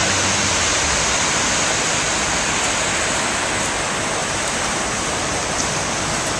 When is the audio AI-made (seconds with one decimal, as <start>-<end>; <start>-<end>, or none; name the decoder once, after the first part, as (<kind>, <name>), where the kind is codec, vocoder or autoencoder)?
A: 4.2-5.3 (vocoder, BigVGAN v2)